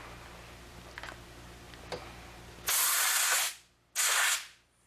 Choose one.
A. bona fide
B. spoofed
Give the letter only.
A